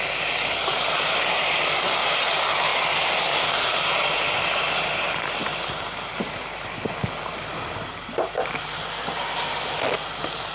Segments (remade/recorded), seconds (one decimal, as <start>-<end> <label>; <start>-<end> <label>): 0.0-10.5 recorded

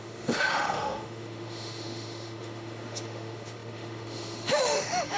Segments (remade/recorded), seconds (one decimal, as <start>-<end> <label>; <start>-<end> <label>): 0.0-5.2 remade

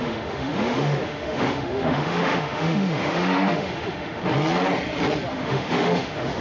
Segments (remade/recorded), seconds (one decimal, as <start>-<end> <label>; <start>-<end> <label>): 0.0-4.2 remade; 4.2-5.3 recorded; 5.3-6.4 remade

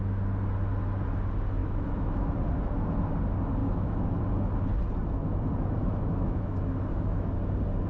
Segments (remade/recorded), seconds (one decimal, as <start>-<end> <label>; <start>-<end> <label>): 0.0-1.6 recorded; 1.6-2.3 remade; 2.3-3.6 recorded; 3.6-4.2 remade; 4.2-5.8 recorded; 5.8-7.4 remade; 7.4-7.9 recorded